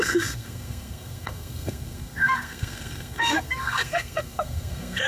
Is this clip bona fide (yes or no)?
no